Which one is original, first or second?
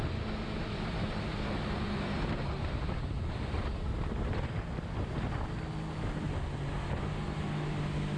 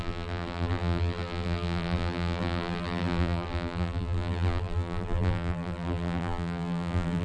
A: first